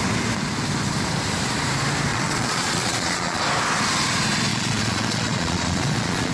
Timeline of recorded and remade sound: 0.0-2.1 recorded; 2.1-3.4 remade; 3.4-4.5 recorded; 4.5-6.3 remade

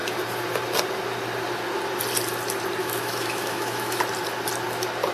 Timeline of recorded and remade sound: 0.0-2.8 recorded; 2.8-4.0 remade; 4.0-5.1 recorded

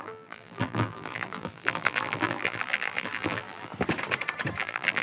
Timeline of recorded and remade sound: 0.0-3.7 remade; 3.7-4.6 recorded; 4.6-5.0 remade

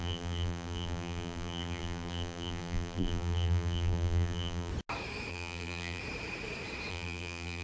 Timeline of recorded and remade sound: 0.0-4.7 remade; 4.7-5.3 recorded; 5.3-6.0 remade; 6.0-6.9 recorded; 6.9-7.6 remade

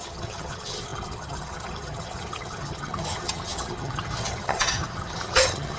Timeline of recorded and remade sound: 0.0-5.8 remade

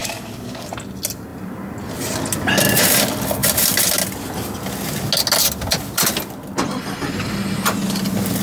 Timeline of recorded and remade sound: 0.0-0.7 remade; 0.7-8.4 recorded

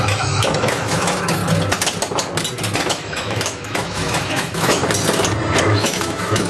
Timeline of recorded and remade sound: 0.0-1.4 remade; 1.4-2.9 recorded; 2.9-4.8 remade; 4.8-5.6 recorded; 5.6-6.5 remade